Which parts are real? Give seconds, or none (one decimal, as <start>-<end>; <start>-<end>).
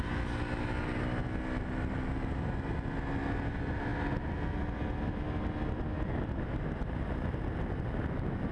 0.0-8.5